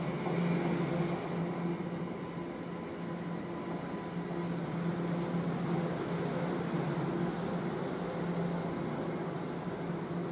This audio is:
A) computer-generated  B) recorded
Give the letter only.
B